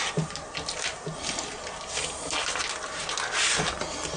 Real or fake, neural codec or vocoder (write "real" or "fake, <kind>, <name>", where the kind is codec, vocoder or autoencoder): real